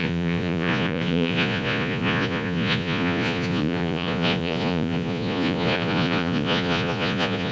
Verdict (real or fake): fake